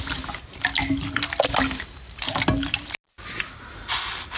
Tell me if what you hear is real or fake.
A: real